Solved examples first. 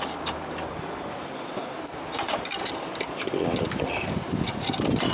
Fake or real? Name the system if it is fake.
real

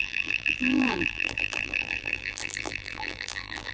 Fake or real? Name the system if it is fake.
fake, vocoder, BigVGAN v2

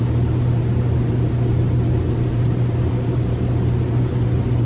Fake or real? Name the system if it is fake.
real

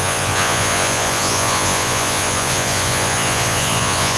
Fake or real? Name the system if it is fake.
fake, vocoder, Vocos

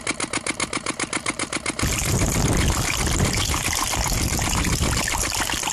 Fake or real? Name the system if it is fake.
real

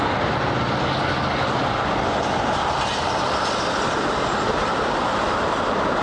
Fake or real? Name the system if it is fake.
real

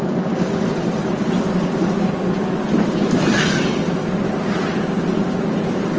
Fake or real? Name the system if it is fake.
real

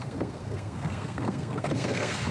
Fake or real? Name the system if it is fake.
fake, codec, SNAC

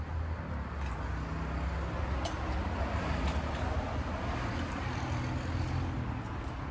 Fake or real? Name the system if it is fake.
real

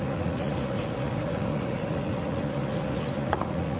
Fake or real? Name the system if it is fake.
fake, vocoder, Vocos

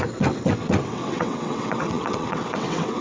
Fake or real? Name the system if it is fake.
fake, vocoder, WaveNeXt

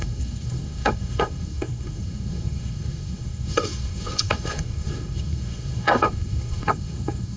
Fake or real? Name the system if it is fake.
fake, codec, SNAC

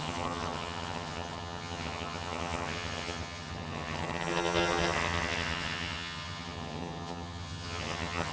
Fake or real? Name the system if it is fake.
fake, vocoder, HiFi-GAN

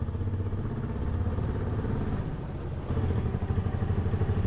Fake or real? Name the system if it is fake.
real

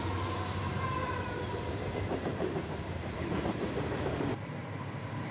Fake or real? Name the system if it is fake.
fake, vocoder, BigVGAN v2